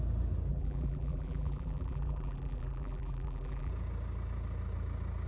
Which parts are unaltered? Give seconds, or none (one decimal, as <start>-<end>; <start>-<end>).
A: 0.0-0.5; 3.7-5.3